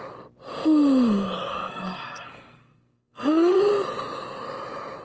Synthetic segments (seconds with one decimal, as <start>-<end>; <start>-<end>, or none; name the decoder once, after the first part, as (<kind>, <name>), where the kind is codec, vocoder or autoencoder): 1.5-3.6 (codec, SNAC)